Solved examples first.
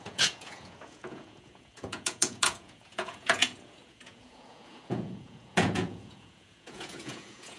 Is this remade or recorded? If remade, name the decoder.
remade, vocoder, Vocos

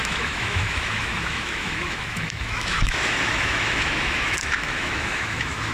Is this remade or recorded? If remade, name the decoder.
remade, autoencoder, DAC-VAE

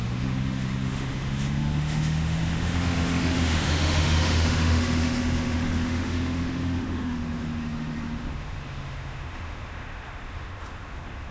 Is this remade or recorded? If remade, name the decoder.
remade, autoencoder, DAC-VAE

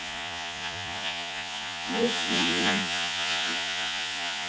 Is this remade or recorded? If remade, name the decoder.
remade, vocoder, Vocos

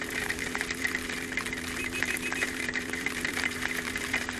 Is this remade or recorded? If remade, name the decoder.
remade, vocoder, BigVGAN v2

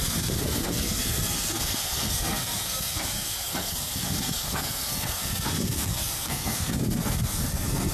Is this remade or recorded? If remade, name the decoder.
remade, codec, SNAC